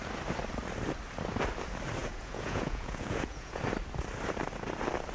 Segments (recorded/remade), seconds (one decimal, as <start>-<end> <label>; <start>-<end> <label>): 0.0-2.0 recorded; 2.0-3.6 remade; 3.6-5.1 recorded